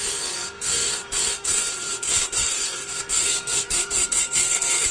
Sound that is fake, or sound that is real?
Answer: fake